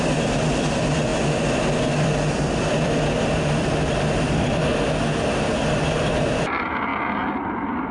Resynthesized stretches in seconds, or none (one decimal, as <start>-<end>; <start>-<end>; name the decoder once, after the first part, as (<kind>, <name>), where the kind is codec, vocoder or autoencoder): 0.0-4.7 (vocoder, BigVGAN v2); 5.6-6.9; 7.4-7.9